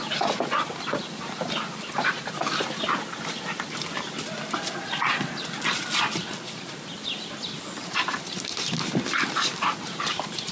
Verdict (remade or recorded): recorded